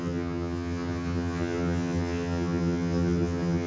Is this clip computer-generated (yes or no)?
yes